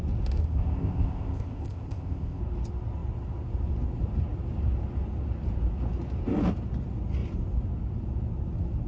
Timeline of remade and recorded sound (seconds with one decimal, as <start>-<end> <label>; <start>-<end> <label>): 0.0-0.4 recorded; 0.4-2.4 remade; 2.4-8.9 recorded